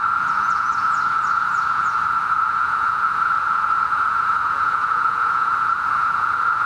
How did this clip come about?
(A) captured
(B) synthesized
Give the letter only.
B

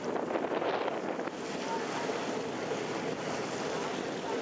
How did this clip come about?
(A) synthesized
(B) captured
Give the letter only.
B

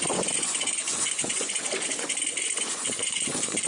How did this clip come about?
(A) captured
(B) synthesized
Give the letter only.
B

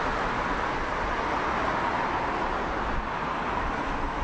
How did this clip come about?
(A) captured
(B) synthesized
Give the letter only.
A